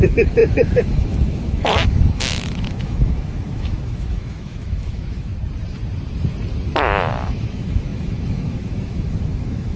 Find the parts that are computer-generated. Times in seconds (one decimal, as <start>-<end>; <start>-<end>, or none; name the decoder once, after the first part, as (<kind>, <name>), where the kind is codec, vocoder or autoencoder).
0.0-5.3 (autoencoder, DAC-VAE); 7.1-9.8